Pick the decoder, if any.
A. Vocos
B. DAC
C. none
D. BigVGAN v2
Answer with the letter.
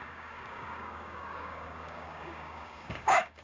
B